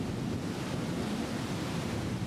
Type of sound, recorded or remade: recorded